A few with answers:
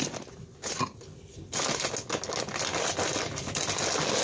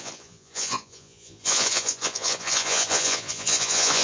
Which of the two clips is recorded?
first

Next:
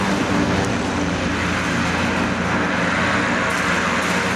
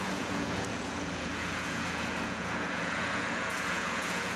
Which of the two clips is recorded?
first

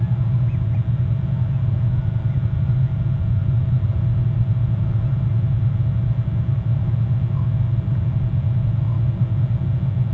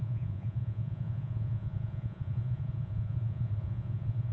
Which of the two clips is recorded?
first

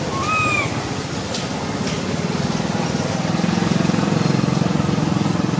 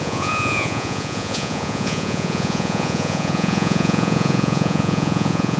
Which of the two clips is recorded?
first